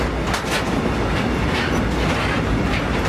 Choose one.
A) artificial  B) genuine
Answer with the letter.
B